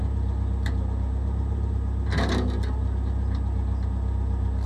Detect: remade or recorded recorded